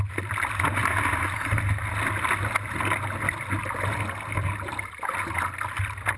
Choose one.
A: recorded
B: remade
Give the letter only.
A